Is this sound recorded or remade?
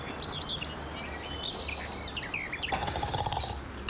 recorded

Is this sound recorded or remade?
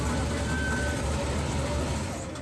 recorded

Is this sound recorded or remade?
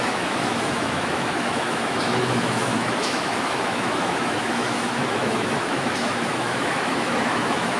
remade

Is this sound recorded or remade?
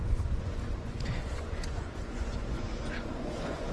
remade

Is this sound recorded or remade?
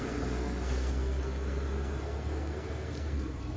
remade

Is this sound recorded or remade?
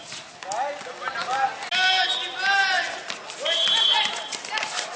recorded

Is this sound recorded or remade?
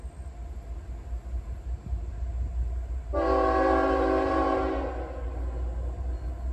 recorded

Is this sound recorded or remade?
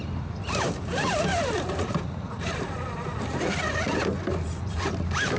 remade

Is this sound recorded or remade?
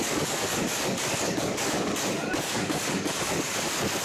remade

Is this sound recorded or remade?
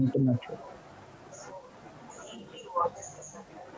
recorded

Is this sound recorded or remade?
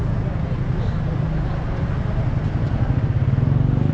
recorded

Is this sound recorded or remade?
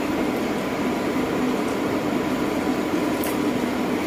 recorded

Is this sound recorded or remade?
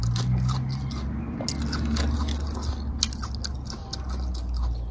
recorded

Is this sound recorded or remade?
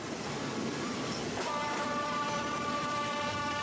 remade